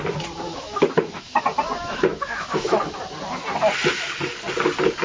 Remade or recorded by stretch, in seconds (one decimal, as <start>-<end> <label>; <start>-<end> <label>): 0.0-0.5 recorded; 0.5-1.4 remade; 1.4-1.8 recorded; 1.8-2.9 remade; 2.9-5.0 recorded